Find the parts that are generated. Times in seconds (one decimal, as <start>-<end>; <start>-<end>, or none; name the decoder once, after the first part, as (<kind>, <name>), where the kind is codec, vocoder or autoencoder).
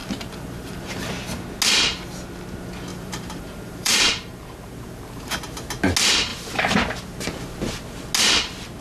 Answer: 0.0-1.1 (vocoder, BigVGAN v2); 2.9-5.4; 6.3-6.8